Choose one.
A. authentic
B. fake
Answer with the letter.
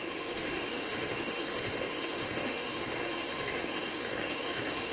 B